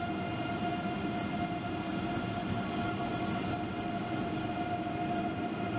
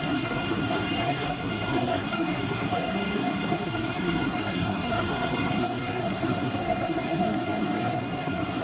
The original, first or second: first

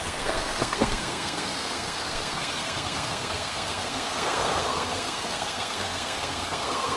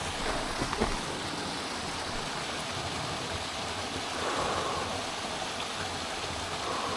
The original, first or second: second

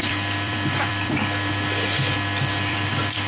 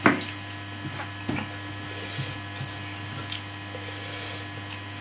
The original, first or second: second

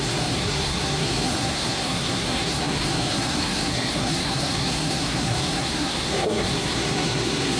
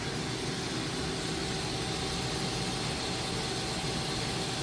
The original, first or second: second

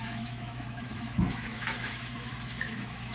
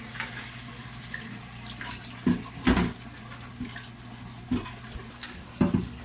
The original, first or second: second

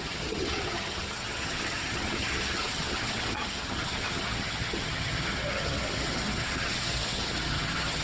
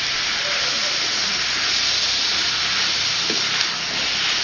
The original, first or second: second